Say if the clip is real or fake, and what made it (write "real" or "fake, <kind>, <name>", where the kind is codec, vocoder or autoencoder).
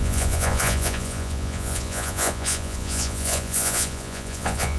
fake, vocoder, Vocos